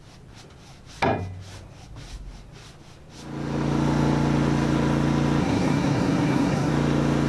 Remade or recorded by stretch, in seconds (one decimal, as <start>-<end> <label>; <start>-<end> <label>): 0.0-5.4 recorded; 5.4-6.7 remade; 6.7-7.3 recorded

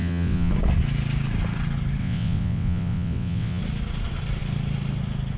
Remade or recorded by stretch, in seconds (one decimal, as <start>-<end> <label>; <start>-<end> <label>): 0.0-0.5 remade; 0.5-2.0 recorded; 2.0-3.6 remade; 3.6-5.4 recorded

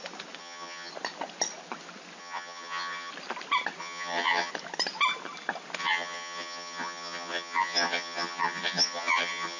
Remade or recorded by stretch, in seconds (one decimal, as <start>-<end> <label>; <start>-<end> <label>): 0.0-0.4 recorded; 0.4-0.9 remade; 0.9-2.2 recorded; 2.2-3.1 remade; 3.1-3.8 recorded; 3.8-4.5 remade; 4.5-5.8 recorded; 5.8-9.6 remade

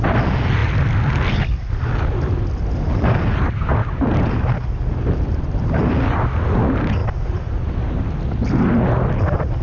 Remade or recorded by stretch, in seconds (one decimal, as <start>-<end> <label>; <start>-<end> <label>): 0.0-9.6 recorded

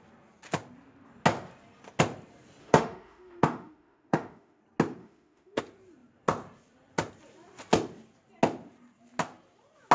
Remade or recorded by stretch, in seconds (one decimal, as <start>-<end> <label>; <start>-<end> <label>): 0.0-2.6 recorded; 2.6-4.6 remade; 4.6-5.0 recorded; 5.0-5.6 remade; 5.6-9.9 recorded